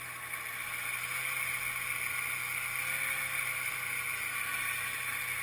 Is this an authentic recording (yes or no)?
yes